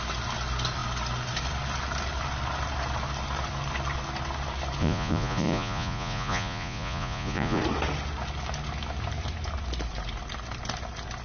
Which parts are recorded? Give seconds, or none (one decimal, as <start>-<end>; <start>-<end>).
0.0-4.8; 7.6-11.2